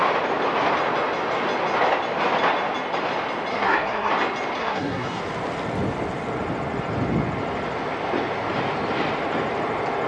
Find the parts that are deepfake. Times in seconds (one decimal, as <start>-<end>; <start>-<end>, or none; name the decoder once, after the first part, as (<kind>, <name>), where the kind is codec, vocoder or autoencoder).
3.5-4.1 (codec, SNAC); 4.6-5.2